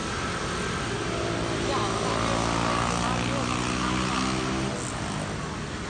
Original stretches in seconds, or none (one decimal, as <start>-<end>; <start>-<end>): 0.0-5.9